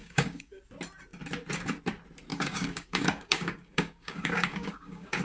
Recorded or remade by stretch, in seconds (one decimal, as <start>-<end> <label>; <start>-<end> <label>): 0.0-0.6 remade; 0.6-2.3 recorded; 2.3-5.2 remade